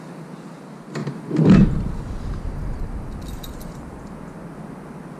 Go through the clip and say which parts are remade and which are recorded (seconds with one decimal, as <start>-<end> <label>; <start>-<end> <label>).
0.0-1.0 recorded; 1.0-3.8 remade; 3.8-5.2 recorded